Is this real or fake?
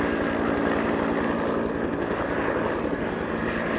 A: fake